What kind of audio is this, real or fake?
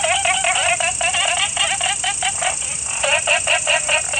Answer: real